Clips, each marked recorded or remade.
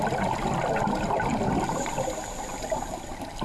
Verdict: recorded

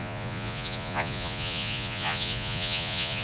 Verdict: remade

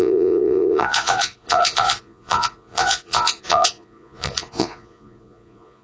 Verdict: remade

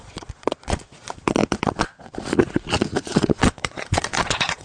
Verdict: remade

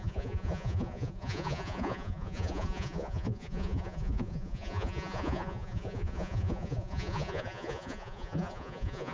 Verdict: remade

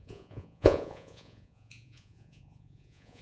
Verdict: remade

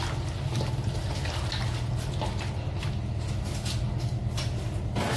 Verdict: recorded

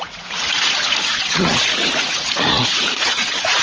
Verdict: remade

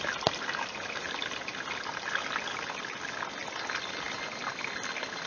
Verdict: recorded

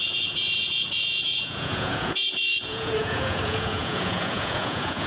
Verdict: remade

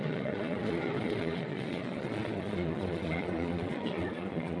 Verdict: remade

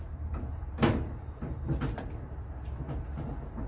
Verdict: recorded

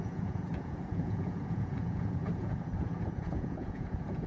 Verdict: remade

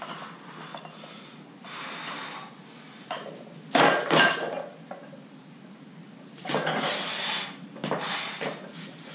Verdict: recorded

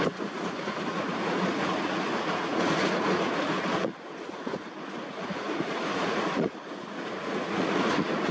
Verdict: remade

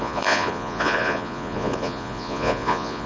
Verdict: remade